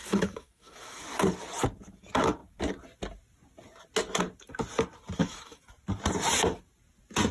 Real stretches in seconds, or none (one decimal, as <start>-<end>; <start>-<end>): 1.0-5.2; 5.7-7.3